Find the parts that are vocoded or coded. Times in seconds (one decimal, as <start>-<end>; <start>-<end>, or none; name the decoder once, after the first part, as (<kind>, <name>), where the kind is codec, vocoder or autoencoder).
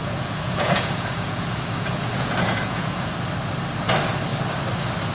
0.0-3.1 (vocoder, Vocos)